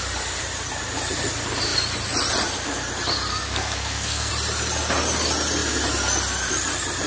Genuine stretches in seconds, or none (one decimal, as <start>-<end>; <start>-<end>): 0.0-3.3; 4.3-7.1